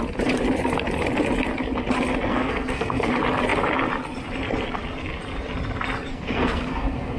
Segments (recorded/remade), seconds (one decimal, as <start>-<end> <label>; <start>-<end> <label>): 0.0-2.3 recorded; 2.3-3.1 remade; 3.1-6.1 recorded; 6.1-7.2 remade